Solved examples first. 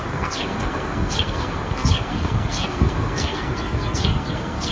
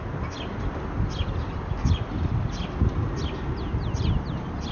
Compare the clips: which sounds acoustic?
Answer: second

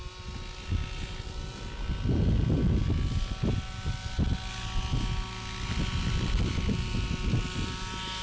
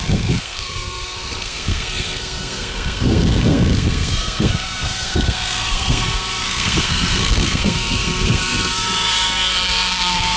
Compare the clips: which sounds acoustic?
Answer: first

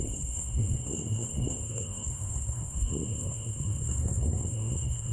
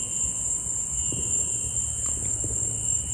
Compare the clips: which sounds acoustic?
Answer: second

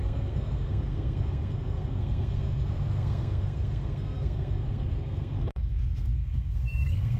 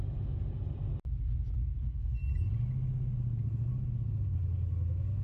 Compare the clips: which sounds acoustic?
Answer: second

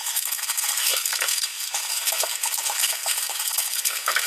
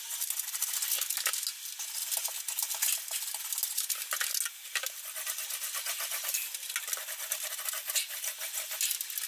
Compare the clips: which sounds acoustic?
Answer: second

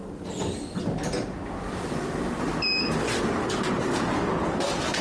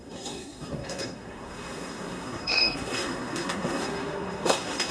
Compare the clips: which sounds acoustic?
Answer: first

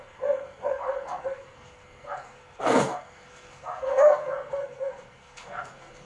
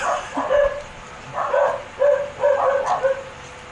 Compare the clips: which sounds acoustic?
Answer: second